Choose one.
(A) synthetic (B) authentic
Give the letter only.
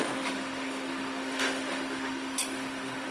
A